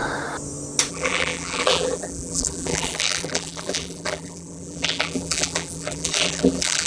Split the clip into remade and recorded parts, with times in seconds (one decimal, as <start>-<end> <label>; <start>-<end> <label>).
0.0-0.9 recorded; 0.9-6.9 remade